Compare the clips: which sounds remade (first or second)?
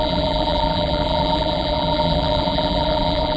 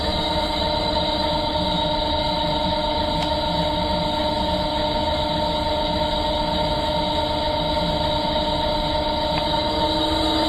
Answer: first